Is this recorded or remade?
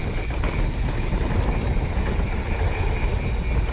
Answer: recorded